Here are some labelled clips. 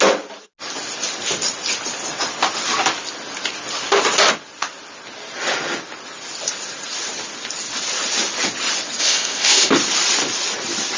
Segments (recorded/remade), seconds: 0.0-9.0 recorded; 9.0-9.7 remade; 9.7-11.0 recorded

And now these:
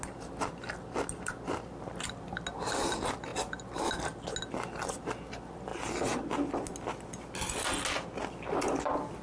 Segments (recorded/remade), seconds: 0.0-9.2 recorded

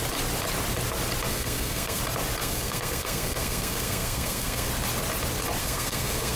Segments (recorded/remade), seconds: 0.0-1.3 recorded; 1.3-2.0 remade; 2.0-2.4 recorded; 2.4-4.7 remade; 4.7-5.6 recorded; 5.6-6.4 remade

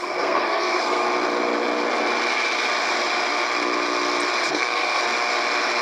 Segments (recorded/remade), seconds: 0.0-1.0 remade; 1.0-4.5 recorded; 4.5-5.0 remade; 5.0-5.8 recorded

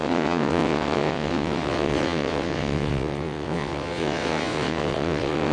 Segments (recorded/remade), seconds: 0.0-5.5 remade

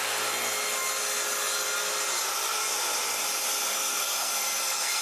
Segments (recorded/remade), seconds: 0.0-3.7 recorded; 3.7-5.0 remade